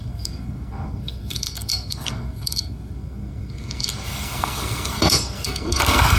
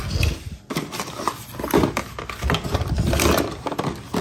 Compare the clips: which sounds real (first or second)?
second